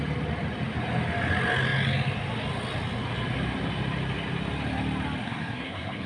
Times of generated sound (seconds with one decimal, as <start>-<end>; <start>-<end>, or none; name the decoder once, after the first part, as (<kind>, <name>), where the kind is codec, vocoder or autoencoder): 5.2-6.1 (codec, SNAC)